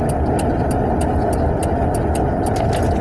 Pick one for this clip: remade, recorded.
recorded